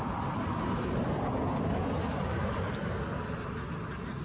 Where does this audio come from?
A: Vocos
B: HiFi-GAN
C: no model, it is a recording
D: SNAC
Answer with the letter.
C